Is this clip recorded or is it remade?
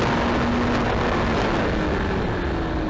recorded